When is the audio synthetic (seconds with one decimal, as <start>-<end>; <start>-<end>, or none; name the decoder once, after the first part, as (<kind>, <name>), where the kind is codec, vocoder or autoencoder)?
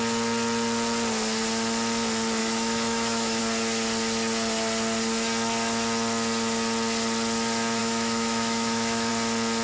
2.4-3.4 (autoencoder, DAC-VAE); 7.8-9.1